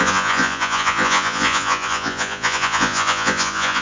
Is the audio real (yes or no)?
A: no